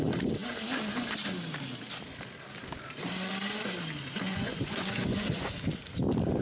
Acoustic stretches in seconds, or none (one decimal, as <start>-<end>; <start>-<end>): 0.0-4.1; 5.5-6.4